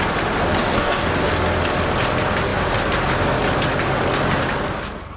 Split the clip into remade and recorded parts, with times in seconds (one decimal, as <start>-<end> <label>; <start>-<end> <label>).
0.0-0.6 recorded; 0.6-1.3 remade; 1.3-5.2 recorded